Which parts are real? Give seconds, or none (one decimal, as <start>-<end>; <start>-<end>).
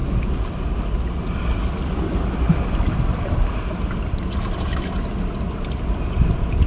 0.0-6.7